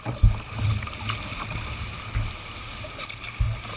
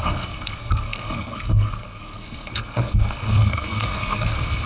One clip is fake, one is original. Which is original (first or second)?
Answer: first